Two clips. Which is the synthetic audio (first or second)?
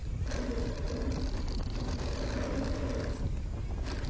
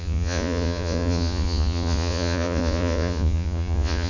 second